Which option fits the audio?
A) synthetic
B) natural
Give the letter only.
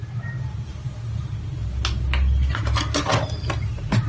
B